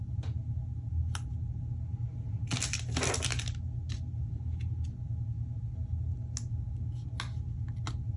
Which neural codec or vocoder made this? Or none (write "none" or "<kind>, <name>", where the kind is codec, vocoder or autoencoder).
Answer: none